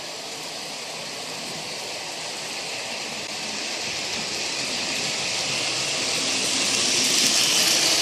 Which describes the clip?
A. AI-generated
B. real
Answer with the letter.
B